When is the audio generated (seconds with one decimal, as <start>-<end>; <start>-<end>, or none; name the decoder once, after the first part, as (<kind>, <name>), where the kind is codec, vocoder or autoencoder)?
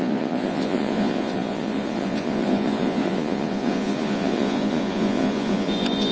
0.0-6.1 (vocoder, Vocos)